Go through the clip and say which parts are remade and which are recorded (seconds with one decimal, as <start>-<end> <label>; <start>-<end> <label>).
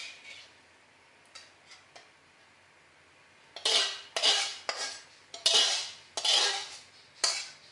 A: 0.0-7.7 recorded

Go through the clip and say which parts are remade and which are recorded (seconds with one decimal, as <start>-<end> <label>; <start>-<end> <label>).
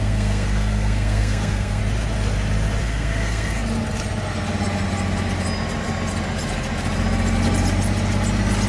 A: 0.0-1.8 remade; 1.8-2.8 recorded; 2.8-3.6 remade; 3.6-8.7 recorded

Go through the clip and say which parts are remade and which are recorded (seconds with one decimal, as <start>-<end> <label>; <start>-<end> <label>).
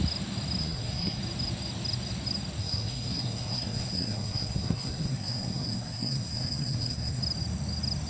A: 0.0-0.6 recorded; 0.6-1.2 remade; 1.2-2.6 recorded; 2.6-7.2 remade; 7.2-8.1 recorded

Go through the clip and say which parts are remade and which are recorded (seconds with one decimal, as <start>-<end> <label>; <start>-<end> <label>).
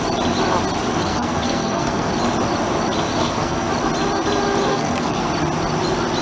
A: 0.0-1.0 recorded; 1.0-2.1 remade; 2.1-3.2 recorded; 3.2-3.7 remade; 3.7-4.7 recorded; 4.7-5.3 remade; 5.3-6.2 recorded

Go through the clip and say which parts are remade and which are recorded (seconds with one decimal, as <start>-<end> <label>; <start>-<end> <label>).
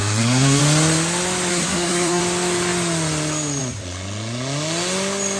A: 0.0-0.6 remade; 0.6-1.5 recorded; 1.5-2.2 remade; 2.2-5.4 recorded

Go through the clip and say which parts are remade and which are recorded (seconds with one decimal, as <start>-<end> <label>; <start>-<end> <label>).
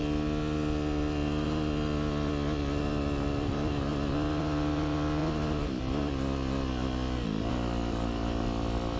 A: 0.0-9.0 recorded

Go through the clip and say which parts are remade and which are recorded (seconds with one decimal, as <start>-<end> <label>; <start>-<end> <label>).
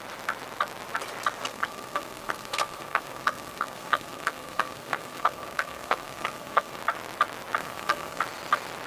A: 0.0-1.5 recorded; 1.5-6.8 remade; 6.8-7.6 recorded; 7.6-8.2 remade; 8.2-8.9 recorded